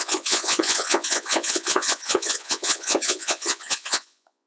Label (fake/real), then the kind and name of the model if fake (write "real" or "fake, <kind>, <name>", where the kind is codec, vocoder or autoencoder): fake, vocoder, Vocos